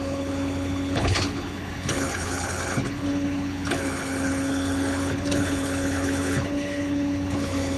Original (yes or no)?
no